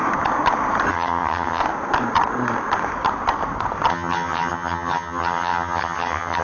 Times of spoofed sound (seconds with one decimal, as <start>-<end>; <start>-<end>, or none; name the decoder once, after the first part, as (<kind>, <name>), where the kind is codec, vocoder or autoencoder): 0.9-1.6 (vocoder, HiFi-GAN); 3.9-6.4